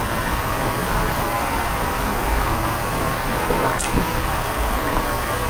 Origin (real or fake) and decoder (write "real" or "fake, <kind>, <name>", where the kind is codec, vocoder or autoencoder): fake, codec, SNAC